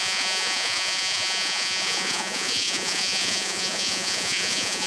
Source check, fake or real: fake